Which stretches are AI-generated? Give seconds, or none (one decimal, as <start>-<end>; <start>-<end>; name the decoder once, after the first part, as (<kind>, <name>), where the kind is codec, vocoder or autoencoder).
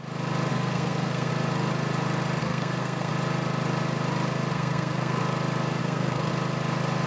0.5-1.3 (codec, SNAC); 2.4-3.1; 4.5-5.2; 5.8-6.3